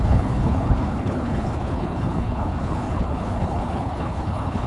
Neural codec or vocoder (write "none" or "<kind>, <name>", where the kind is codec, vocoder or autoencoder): codec, HILCodec